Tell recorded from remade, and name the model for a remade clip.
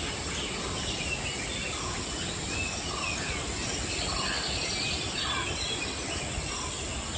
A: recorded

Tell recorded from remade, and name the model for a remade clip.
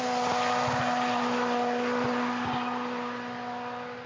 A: recorded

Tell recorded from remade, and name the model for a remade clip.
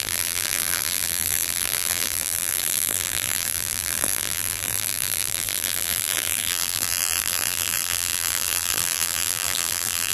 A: remade, vocoder, BigVGAN v2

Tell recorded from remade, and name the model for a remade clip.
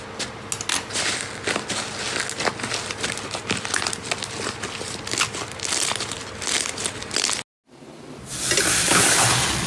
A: recorded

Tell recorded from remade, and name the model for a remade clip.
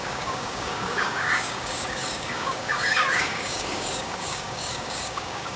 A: remade, codec, DAC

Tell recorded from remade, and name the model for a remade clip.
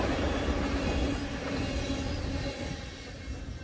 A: recorded